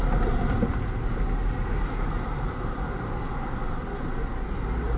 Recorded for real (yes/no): yes